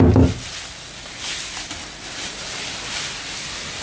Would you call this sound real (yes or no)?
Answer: yes